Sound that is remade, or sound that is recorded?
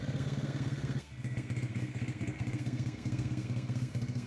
remade